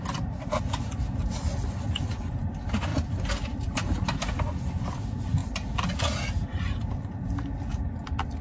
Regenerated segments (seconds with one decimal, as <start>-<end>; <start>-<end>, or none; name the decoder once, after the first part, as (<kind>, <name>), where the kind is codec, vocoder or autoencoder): 2.9-4.0 (vocoder, BigVGAN v2)